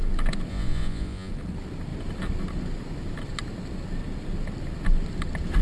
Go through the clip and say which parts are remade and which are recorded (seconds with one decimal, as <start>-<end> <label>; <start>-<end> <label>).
0.0-0.5 recorded; 0.5-1.3 remade; 1.3-5.6 recorded